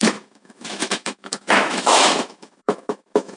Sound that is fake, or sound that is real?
fake